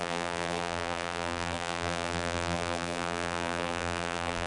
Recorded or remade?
remade